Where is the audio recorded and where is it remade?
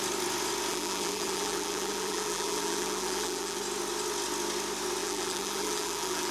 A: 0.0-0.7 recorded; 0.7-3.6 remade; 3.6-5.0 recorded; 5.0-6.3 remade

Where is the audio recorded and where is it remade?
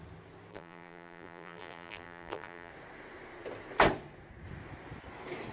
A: 0.0-0.5 recorded; 0.5-2.7 remade; 2.7-5.5 recorded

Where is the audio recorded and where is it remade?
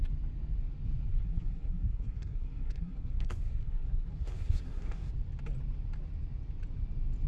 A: 0.0-1.1 recorded; 1.1-5.1 remade; 5.1-7.3 recorded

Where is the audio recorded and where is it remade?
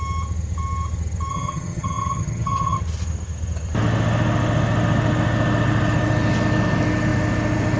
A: 0.0-1.3 recorded; 1.3-2.8 remade; 2.8-7.8 recorded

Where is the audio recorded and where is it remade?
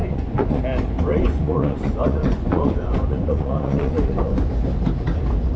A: 0.0-0.6 remade; 0.6-1.1 recorded; 1.1-4.5 remade; 4.5-5.6 recorded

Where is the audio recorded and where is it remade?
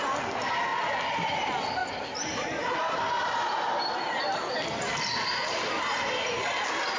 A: 0.0-0.7 recorded; 0.7-1.4 remade; 1.4-1.8 recorded; 1.8-6.0 remade; 6.0-7.0 recorded